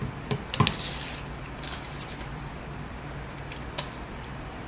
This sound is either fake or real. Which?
fake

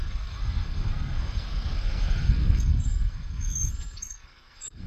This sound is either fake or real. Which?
fake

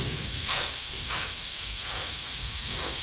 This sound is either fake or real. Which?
fake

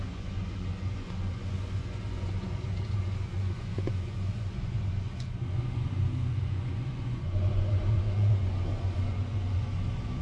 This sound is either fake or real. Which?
fake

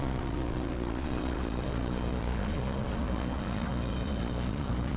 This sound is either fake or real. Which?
fake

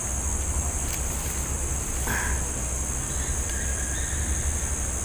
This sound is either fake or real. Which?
real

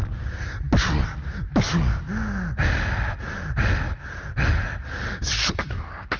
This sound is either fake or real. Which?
real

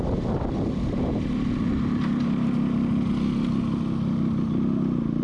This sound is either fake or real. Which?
real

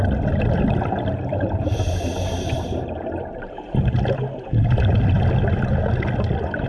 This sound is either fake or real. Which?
real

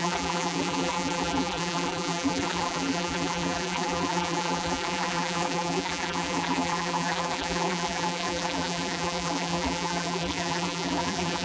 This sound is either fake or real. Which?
fake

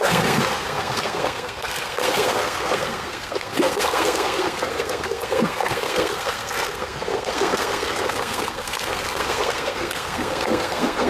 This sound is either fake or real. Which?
fake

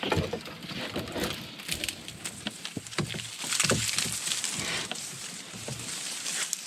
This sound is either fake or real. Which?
real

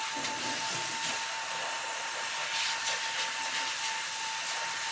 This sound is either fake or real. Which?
fake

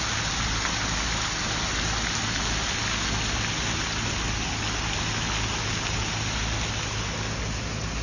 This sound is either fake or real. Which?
real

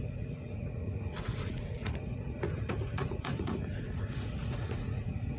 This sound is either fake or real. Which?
fake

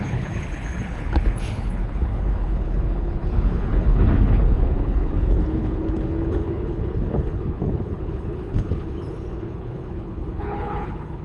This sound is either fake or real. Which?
fake